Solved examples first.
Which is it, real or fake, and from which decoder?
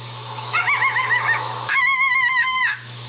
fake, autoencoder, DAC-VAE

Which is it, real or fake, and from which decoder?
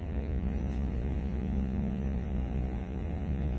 fake, vocoder, Vocos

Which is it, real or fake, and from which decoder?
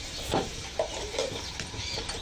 real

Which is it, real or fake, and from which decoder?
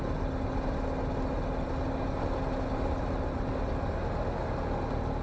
real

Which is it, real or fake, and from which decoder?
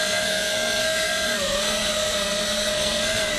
fake, codec, SNAC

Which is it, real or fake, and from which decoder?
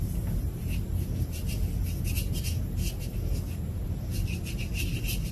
fake, vocoder, BigVGAN v2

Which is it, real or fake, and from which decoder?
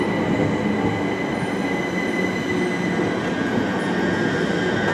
real